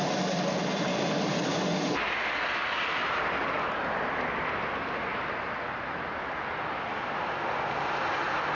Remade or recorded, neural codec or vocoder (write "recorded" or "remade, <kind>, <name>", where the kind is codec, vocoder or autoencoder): recorded